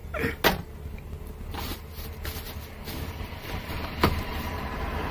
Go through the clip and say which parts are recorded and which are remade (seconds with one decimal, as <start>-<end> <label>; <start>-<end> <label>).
0.0-3.1 recorded; 3.1-5.1 remade